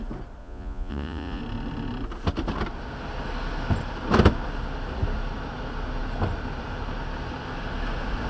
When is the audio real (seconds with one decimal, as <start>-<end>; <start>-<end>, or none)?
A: 0.0-0.4; 1.4-8.3